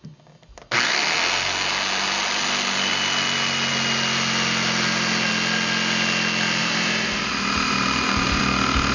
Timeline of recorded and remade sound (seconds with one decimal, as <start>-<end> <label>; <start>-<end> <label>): 0.0-6.6 recorded; 6.6-8.4 remade; 8.4-8.9 recorded